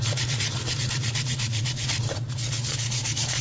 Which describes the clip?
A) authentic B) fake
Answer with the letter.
B